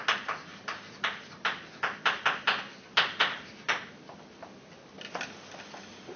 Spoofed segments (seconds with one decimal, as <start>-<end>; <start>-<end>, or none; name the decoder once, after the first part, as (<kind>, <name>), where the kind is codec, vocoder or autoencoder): none